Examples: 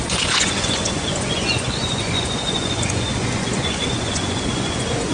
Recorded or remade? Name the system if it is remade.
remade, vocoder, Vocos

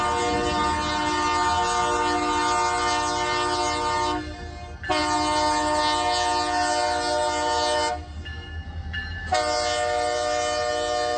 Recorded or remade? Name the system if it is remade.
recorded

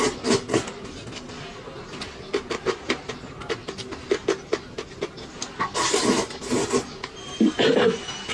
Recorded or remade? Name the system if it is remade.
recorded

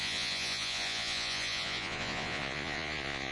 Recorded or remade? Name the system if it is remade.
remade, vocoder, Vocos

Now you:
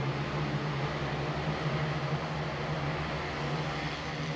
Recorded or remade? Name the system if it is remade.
recorded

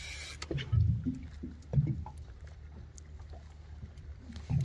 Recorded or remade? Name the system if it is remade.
recorded